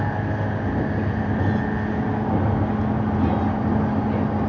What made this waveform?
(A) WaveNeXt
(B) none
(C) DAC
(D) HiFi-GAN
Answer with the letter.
B